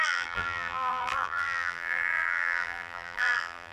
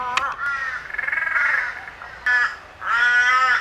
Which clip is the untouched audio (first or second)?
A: second